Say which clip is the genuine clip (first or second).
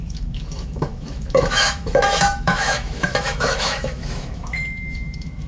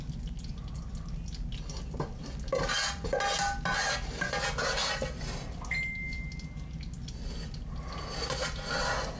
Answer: second